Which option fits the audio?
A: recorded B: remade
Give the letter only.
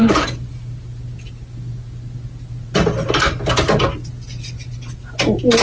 A